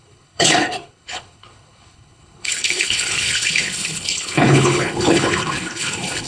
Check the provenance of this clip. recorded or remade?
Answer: remade